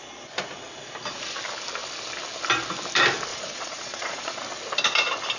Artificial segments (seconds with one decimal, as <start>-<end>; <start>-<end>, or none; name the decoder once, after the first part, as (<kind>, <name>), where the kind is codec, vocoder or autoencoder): 3.3-4.4 (vocoder, Vocos)